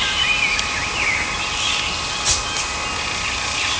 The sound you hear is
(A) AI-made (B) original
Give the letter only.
B